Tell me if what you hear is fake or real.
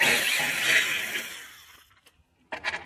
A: real